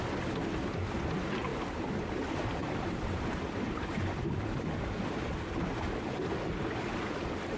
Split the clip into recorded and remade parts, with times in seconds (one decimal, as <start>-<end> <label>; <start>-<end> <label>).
0.0-2.6 recorded; 2.6-4.3 remade; 4.3-7.6 recorded